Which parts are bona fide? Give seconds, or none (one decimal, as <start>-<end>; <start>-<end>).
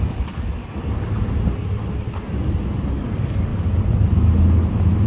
0.6-2.9; 3.5-5.1